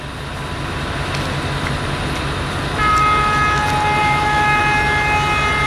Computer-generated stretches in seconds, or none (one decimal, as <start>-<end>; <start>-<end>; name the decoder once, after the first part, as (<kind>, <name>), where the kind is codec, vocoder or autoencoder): 4.0-4.6 (autoencoder, DAC-VAE)